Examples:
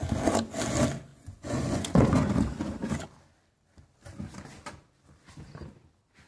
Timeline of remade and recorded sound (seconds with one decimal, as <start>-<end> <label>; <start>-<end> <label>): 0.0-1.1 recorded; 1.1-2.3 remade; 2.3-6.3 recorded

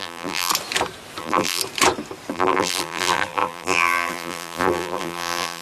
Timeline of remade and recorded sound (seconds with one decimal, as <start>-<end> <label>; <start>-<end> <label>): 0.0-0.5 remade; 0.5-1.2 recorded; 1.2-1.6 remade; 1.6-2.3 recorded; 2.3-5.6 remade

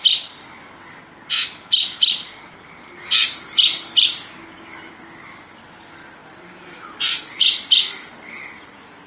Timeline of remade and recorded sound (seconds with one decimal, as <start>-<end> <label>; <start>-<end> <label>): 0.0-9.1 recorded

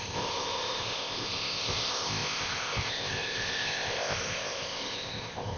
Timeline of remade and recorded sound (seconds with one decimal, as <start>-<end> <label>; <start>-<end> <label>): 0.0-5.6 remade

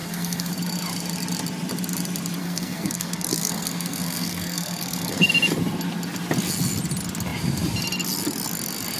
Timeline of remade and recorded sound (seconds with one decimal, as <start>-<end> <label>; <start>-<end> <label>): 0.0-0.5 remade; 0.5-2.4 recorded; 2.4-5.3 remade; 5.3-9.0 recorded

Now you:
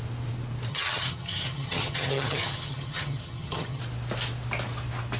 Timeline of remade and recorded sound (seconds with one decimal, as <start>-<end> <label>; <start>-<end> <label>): 0.0-0.7 recorded; 0.7-3.8 remade; 3.8-5.2 recorded